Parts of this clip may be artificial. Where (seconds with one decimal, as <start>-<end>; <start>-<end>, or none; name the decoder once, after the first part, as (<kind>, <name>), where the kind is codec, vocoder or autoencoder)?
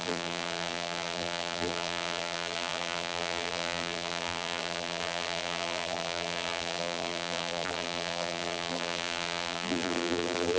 0.0-10.6 (vocoder, BigVGAN v2)